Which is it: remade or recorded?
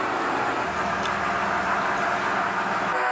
recorded